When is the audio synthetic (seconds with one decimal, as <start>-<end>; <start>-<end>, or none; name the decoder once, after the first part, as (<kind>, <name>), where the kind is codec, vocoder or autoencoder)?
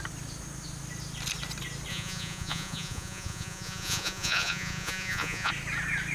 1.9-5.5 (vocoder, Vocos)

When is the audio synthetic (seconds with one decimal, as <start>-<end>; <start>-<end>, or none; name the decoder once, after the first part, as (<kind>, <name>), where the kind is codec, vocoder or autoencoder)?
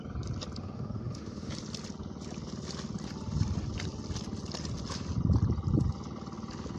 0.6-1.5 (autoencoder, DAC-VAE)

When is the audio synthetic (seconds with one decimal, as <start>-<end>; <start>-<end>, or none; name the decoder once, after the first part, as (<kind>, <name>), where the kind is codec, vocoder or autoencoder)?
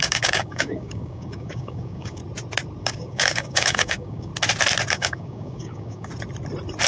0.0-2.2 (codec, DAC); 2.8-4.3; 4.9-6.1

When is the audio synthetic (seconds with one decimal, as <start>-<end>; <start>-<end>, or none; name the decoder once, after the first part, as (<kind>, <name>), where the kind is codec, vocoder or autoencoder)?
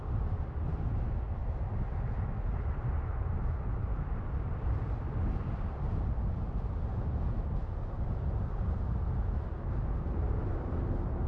1.4-2.2 (vocoder, BigVGAN v2); 10.2-10.8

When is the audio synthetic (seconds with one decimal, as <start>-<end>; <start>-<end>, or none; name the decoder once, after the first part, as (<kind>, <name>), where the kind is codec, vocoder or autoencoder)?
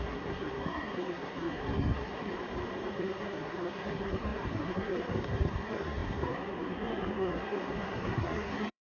0.0-2.3 (codec, SNAC); 2.9-8.9